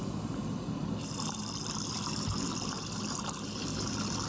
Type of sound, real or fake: fake